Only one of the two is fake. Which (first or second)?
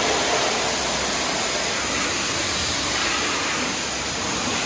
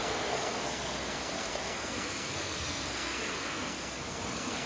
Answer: second